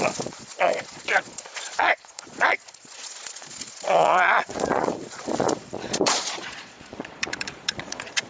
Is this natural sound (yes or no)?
no